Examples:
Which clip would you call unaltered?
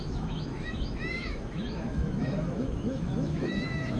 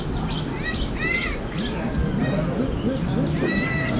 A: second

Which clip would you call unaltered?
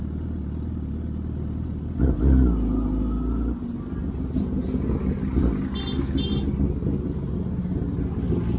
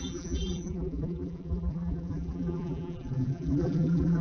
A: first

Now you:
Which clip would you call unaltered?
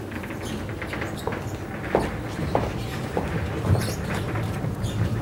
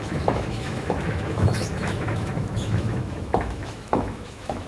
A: first